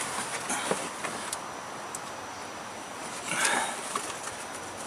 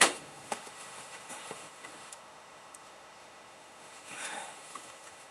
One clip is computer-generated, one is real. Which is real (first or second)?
first